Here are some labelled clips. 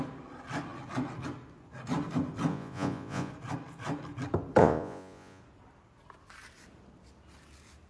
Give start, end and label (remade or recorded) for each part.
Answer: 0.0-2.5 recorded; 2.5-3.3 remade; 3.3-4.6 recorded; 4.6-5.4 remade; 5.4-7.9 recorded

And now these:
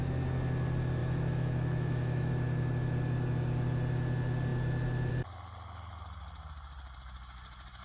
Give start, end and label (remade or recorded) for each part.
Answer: 0.0-1.0 recorded; 1.0-2.3 remade; 2.3-7.8 recorded

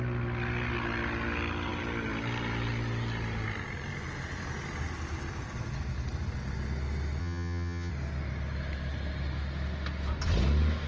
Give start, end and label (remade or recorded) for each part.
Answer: 0.0-7.2 recorded; 7.2-7.9 remade; 7.9-10.9 recorded